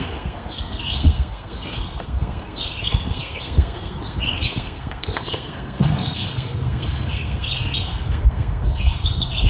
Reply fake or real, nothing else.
fake